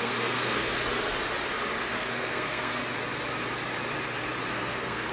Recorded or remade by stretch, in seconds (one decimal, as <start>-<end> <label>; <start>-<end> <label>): 0.0-0.7 remade; 0.7-1.9 recorded; 1.9-2.8 remade; 2.8-4.5 recorded; 4.5-5.1 remade

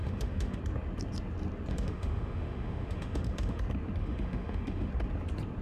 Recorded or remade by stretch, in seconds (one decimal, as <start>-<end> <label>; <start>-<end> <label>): 0.0-0.6 remade; 0.6-1.7 recorded; 1.7-3.6 remade; 3.6-4.0 recorded; 4.0-4.9 remade; 4.9-5.6 recorded